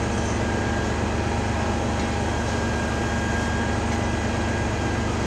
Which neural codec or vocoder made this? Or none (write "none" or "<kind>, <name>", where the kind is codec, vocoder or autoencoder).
none